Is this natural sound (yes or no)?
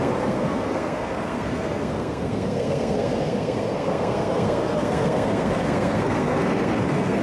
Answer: no